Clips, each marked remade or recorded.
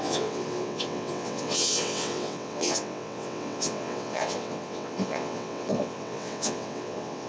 remade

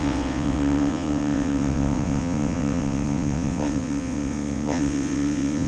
remade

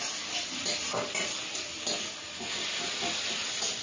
recorded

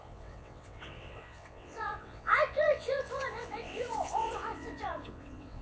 remade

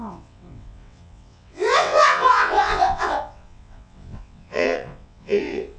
remade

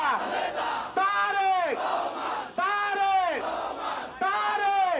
recorded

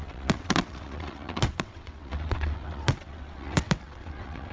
remade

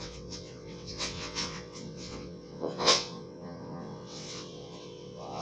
remade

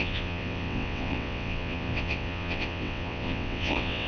remade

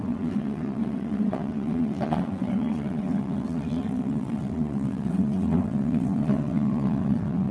remade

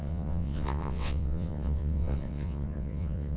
remade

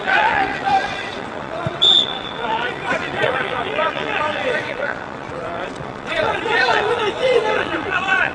remade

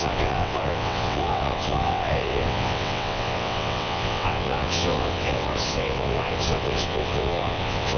remade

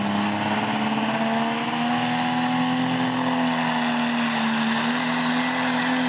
recorded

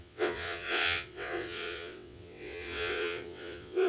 remade